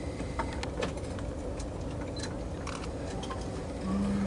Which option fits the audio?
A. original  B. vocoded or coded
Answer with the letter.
A